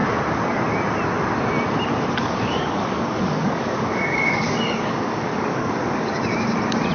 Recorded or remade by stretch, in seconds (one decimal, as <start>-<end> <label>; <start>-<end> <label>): 0.0-2.2 recorded; 2.2-6.1 remade; 6.1-6.9 recorded